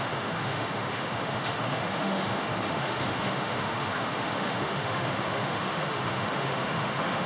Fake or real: fake